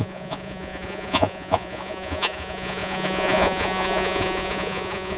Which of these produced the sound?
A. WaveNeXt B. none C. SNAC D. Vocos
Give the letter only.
D